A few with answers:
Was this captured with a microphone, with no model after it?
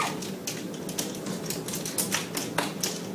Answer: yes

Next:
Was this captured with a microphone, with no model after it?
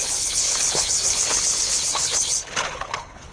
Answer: no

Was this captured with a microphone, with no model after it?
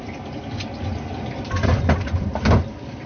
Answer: yes